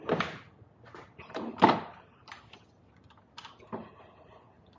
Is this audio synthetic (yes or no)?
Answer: yes